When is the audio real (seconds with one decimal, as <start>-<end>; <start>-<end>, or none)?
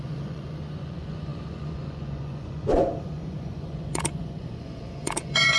none